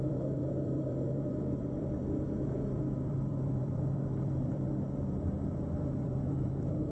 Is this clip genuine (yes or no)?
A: no